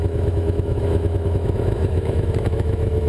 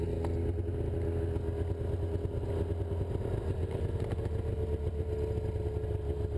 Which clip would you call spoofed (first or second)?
first